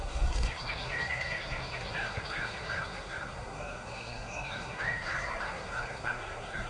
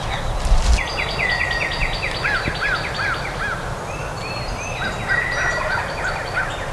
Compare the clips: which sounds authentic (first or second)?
second